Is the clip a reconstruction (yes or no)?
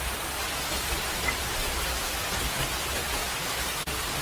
no